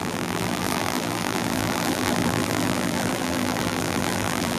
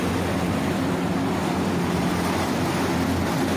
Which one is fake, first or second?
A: first